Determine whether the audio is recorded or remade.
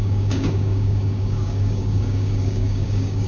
remade